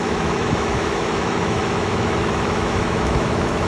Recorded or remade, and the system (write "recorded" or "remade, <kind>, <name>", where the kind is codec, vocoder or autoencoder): remade, autoencoder, DAC-VAE